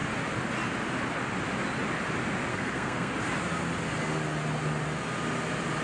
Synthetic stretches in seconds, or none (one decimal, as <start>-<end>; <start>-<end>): 2.5-3.1